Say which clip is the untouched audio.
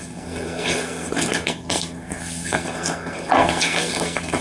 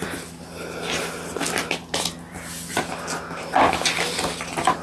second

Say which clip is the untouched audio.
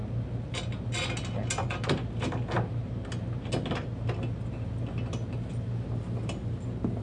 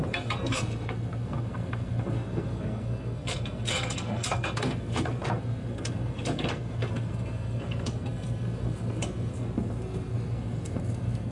first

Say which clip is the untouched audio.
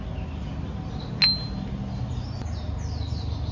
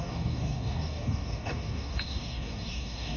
first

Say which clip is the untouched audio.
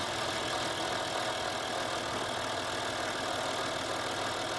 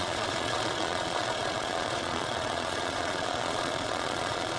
first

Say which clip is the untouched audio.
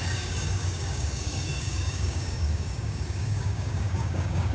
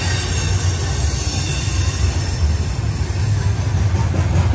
second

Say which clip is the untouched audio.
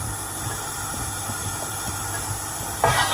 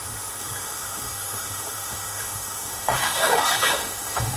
first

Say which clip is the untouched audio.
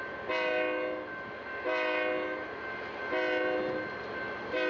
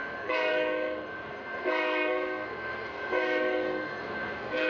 first